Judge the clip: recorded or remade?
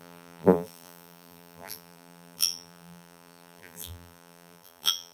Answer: remade